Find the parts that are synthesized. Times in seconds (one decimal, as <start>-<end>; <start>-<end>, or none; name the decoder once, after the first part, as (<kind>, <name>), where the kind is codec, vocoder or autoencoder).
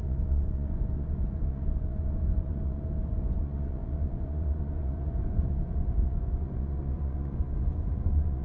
0.0-8.4 (vocoder, Vocos)